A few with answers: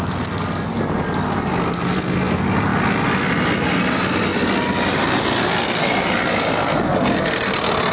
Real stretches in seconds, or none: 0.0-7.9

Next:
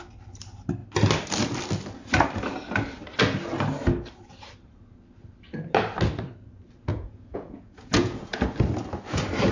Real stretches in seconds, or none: 0.0-6.9; 8.4-9.5

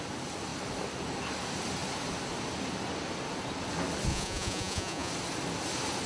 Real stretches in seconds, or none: 0.0-4.1; 5.1-6.1

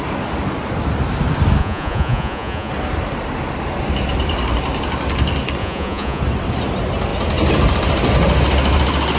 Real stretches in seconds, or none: 0.0-1.6; 2.7-5.6; 6.2-9.2